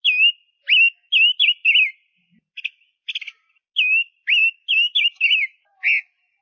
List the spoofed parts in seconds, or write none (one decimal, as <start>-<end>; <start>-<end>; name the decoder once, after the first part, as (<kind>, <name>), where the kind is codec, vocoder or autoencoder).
none